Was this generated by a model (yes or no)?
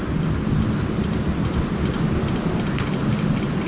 no